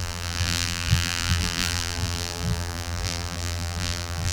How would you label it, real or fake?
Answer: fake